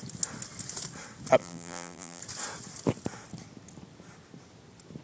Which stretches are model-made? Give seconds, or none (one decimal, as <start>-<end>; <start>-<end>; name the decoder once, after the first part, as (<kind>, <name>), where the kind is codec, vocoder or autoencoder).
1.4-2.2 (vocoder, BigVGAN v2)